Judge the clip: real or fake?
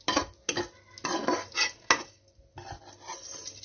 real